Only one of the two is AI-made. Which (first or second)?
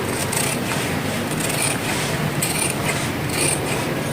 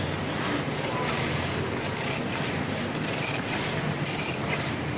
second